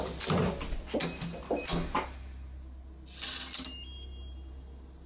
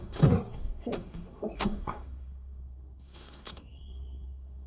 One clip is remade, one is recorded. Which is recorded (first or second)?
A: first